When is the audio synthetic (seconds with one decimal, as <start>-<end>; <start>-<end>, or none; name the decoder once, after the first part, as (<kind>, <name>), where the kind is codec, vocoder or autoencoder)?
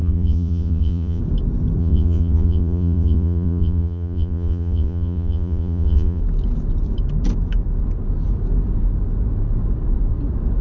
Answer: 0.0-1.2 (vocoder, Vocos); 1.8-6.2